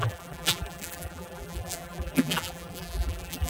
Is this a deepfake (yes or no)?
yes